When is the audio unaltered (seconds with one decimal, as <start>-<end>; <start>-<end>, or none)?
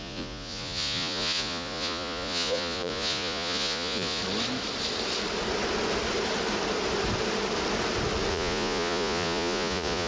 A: 4.2-8.3